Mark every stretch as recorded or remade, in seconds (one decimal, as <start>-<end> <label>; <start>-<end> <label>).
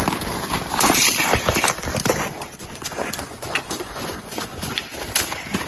0.0-2.1 recorded; 2.1-4.9 remade; 4.9-5.7 recorded